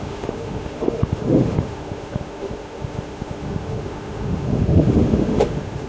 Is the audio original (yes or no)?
no